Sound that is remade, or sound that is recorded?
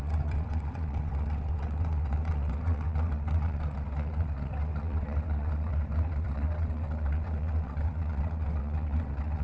remade